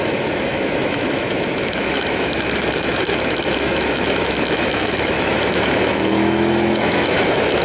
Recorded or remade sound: remade